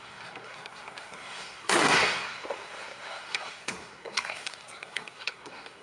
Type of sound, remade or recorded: remade